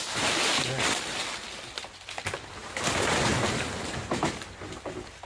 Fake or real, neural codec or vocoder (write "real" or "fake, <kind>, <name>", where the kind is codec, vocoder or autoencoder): real